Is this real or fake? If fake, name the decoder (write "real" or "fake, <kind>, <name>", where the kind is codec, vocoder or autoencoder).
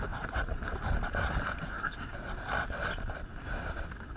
real